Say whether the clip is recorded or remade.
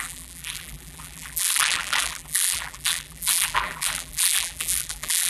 remade